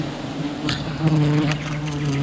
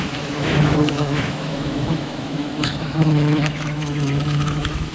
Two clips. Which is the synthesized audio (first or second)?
second